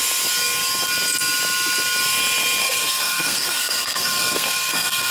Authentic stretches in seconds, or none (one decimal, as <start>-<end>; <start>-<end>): 0.0-2.6